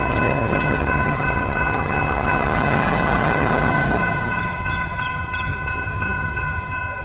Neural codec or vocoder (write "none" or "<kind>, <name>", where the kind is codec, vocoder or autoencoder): vocoder, HiFi-GAN